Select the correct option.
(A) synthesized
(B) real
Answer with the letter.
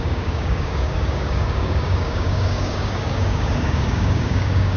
A